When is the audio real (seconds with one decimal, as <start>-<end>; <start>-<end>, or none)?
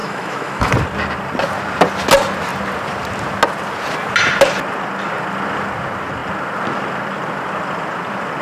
0.7-8.4